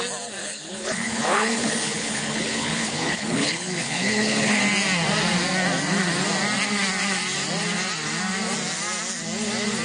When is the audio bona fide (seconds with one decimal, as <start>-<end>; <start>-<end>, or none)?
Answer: 0.0-0.4; 4.6-9.8